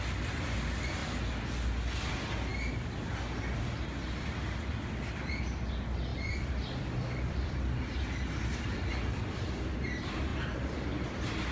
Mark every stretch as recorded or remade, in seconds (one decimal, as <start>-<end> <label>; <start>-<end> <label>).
0.0-6.1 recorded; 6.1-7.8 remade; 7.8-10.3 recorded; 10.3-11.5 remade